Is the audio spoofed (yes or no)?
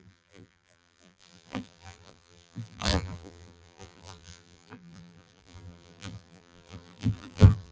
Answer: yes